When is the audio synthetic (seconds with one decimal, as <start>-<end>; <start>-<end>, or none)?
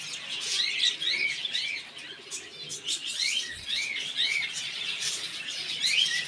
2.7-5.8